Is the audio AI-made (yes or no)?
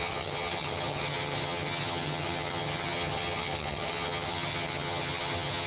yes